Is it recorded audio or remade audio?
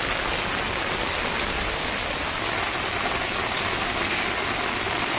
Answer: recorded